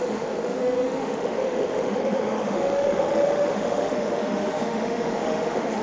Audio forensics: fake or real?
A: fake